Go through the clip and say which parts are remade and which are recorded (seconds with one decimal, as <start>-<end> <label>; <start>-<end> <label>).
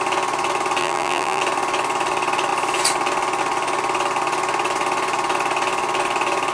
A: 0.0-0.8 recorded; 0.8-1.4 remade; 1.4-6.5 recorded